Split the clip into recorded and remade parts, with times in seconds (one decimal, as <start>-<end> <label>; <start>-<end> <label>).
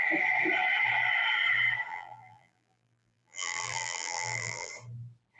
0.0-1.9 recorded; 1.9-4.7 remade; 4.7-5.4 recorded